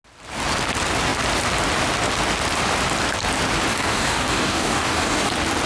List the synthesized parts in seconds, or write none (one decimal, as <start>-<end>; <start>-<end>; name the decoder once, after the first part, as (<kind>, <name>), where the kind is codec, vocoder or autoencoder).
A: 3.7-5.3 (codec, DAC)